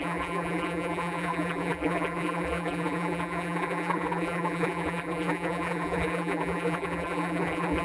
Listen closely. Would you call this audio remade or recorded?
remade